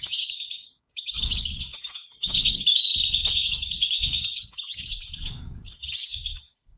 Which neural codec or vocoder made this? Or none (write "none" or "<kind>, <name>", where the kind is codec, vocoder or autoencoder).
codec, DAC